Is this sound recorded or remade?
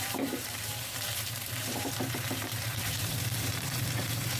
remade